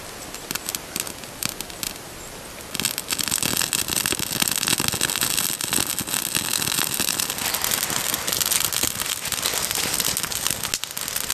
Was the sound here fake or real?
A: real